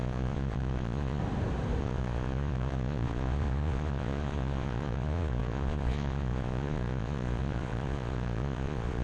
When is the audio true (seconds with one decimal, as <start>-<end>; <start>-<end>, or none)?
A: 1.2-1.8